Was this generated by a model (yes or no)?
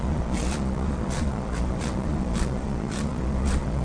yes